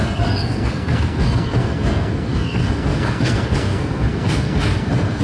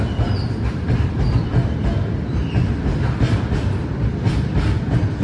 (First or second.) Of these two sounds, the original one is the second